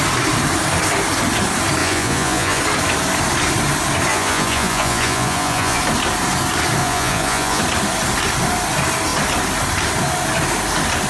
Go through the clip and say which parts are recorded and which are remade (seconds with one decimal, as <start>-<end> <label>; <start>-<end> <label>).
0.0-1.8 recorded; 1.8-2.6 remade; 2.6-4.1 recorded; 4.1-5.8 remade; 5.8-6.8 recorded; 6.8-7.6 remade; 7.6-11.1 recorded